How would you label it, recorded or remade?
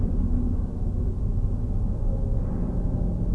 recorded